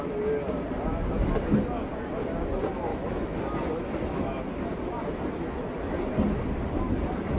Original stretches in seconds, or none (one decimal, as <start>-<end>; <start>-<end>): 0.0-2.9; 3.4-7.4